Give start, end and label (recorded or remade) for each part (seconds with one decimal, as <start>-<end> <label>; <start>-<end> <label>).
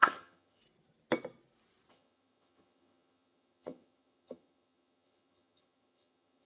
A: 0.0-0.6 remade; 0.6-1.9 recorded; 1.9-6.5 remade